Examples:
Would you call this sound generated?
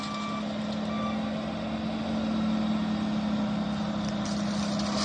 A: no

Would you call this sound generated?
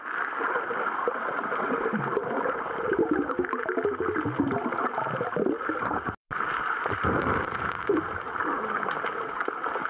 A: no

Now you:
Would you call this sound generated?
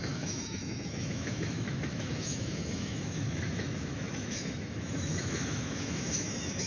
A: yes